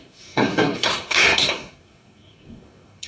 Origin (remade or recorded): remade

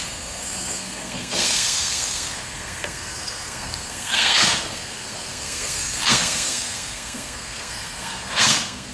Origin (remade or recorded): remade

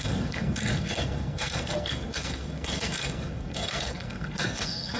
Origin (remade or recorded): remade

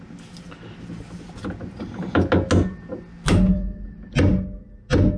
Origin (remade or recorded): recorded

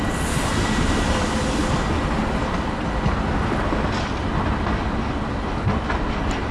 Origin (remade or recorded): recorded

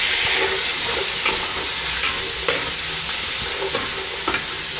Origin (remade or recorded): recorded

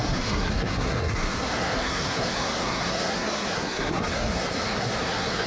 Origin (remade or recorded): remade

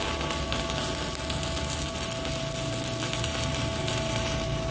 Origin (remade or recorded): recorded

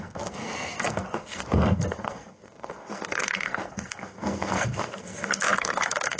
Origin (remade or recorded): remade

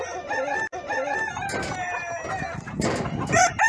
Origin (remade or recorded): recorded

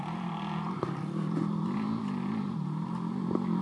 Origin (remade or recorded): recorded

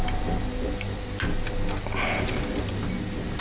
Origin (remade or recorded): recorded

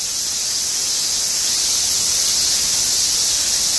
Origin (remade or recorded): recorded